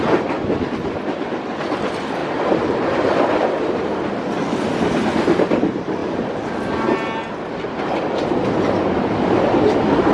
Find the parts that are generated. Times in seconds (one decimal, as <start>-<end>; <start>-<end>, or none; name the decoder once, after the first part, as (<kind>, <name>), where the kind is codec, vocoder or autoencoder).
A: 2.2-3.5 (vocoder, BigVGAN v2)